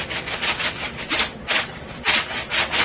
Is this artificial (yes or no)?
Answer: no